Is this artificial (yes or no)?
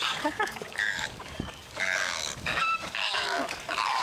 yes